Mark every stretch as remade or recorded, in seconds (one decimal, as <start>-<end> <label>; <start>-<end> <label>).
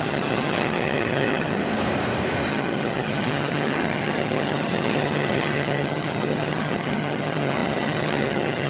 0.0-1.6 remade; 1.6-2.5 recorded; 2.5-8.7 remade